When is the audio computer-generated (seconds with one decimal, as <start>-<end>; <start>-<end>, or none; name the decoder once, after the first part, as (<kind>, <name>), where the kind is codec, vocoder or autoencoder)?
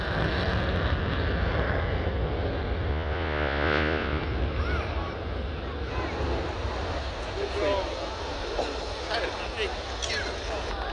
2.9-4.2 (vocoder, Vocos)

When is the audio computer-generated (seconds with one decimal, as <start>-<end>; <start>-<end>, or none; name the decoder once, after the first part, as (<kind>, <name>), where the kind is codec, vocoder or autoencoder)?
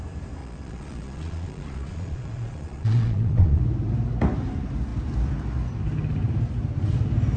0.4-3.6 (vocoder, Vocos)